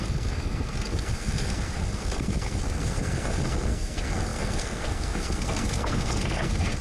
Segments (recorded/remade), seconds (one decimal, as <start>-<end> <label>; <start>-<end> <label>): 0.0-6.8 remade

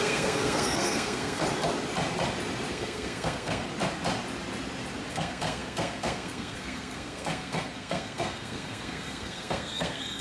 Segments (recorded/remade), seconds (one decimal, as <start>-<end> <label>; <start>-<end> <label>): 0.0-1.4 remade; 1.4-2.7 recorded; 2.7-3.6 remade; 3.6-5.1 recorded; 5.1-10.2 remade

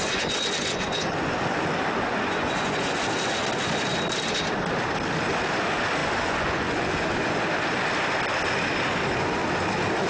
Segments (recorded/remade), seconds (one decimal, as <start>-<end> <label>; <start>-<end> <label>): 0.0-1.6 remade; 1.6-2.1 recorded; 2.1-3.0 remade; 3.0-6.0 recorded; 6.0-7.4 remade; 7.4-10.1 recorded

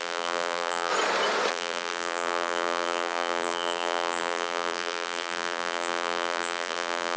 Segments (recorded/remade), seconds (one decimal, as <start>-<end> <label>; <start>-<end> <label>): 0.0-0.9 remade; 0.9-1.5 recorded; 1.5-7.2 remade